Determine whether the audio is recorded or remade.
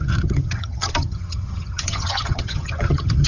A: remade